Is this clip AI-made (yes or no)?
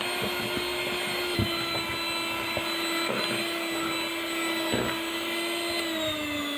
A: no